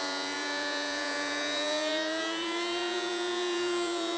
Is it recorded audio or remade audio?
remade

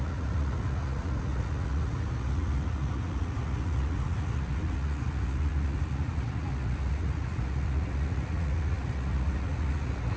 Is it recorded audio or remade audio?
remade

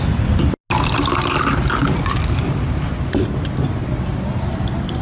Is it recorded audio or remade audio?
recorded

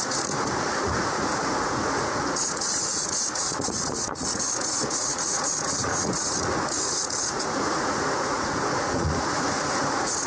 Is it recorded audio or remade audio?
remade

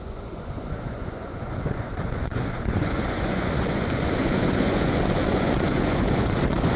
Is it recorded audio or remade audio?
remade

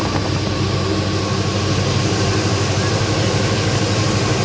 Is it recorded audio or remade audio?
recorded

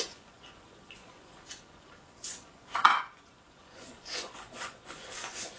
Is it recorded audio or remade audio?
remade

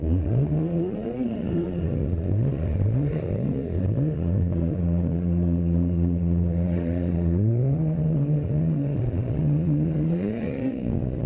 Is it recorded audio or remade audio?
remade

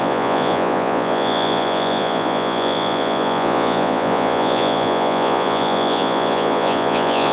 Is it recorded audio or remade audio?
remade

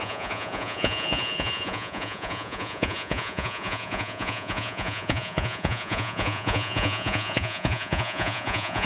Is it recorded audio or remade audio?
remade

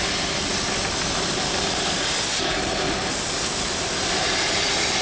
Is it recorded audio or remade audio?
recorded